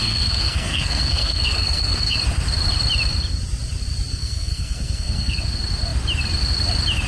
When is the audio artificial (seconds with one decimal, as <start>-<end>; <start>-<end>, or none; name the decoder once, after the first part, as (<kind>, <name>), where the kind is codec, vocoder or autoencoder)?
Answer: 0.0-2.2 (codec, SNAC); 4.1-5.4